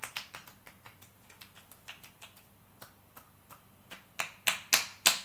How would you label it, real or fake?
real